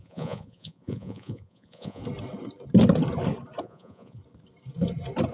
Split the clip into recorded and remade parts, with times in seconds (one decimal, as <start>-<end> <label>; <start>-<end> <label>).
0.0-2.0 remade; 2.0-3.6 recorded; 3.6-4.2 remade; 4.2-5.3 recorded